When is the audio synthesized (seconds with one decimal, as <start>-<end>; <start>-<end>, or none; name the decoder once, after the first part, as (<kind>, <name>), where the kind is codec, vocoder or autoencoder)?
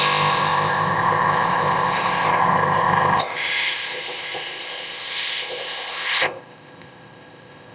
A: 0.0-7.7 (codec, ZipCodec)